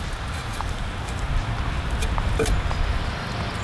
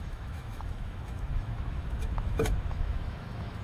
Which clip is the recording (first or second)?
first